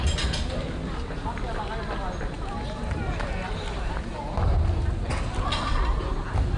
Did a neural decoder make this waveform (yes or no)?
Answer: no